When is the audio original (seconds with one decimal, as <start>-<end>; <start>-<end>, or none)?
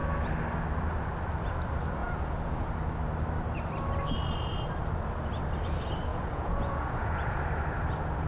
0.0-2.0; 2.7-6.1; 7.4-8.3